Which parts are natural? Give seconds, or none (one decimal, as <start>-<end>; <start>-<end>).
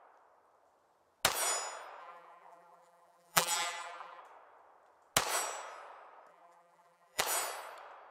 0.0-2.0; 4.2-6.3; 7.2-8.1